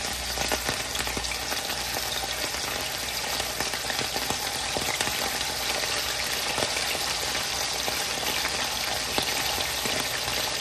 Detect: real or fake real